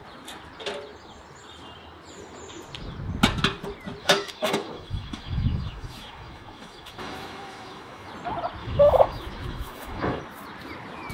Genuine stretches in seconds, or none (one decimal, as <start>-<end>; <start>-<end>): 0.0-4.0; 8.1-8.6; 10.2-11.1